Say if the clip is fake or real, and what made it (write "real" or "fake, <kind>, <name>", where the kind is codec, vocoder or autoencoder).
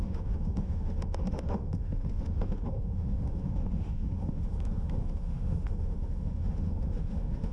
fake, autoencoder, DAC-VAE